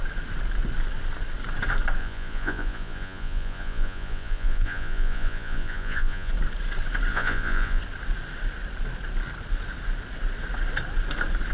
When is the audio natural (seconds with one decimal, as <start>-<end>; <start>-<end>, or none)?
0.0-2.0; 6.3-7.1; 7.8-11.5